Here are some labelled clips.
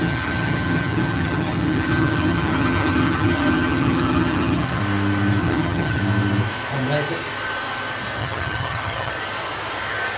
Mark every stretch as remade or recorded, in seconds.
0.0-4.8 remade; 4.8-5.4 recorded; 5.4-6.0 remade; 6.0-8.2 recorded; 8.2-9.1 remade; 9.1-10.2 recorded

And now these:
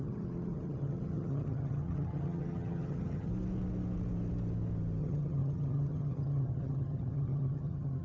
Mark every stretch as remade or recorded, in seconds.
0.0-3.3 remade; 3.3-5.0 recorded; 5.0-8.0 remade

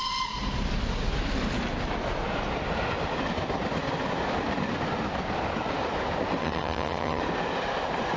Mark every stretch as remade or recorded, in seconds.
0.0-6.4 recorded; 6.4-7.2 remade; 7.2-8.2 recorded

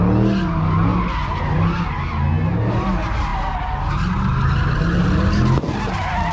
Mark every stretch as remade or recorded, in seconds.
0.0-6.3 recorded

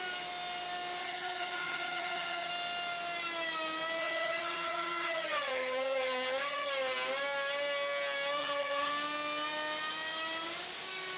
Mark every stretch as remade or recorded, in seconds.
0.0-1.0 recorded; 1.0-2.5 remade; 2.5-4.0 recorded; 4.0-6.7 remade; 6.7-8.4 recorded; 8.4-8.9 remade; 8.9-11.2 recorded

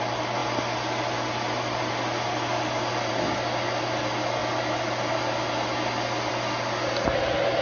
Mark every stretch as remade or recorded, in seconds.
0.0-7.6 recorded

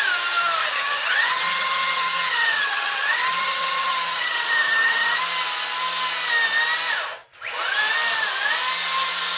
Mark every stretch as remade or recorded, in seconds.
0.0-0.6 recorded; 0.6-5.2 remade; 5.2-9.4 recorded

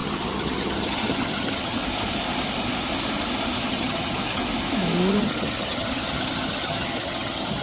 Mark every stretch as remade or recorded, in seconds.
0.0-1.8 remade; 1.8-3.7 recorded; 3.7-4.4 remade; 4.4-5.2 recorded; 5.2-7.6 remade